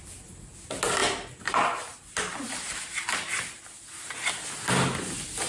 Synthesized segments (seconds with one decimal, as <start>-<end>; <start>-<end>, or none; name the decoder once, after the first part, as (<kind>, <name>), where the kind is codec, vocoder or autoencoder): none